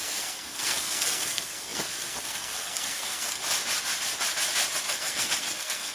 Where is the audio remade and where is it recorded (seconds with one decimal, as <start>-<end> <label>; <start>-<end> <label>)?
0.0-3.4 remade; 3.4-4.8 recorded; 4.8-5.9 remade